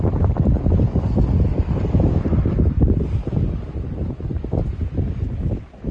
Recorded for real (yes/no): yes